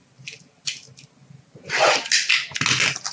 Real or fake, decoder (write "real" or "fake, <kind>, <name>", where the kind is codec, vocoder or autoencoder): real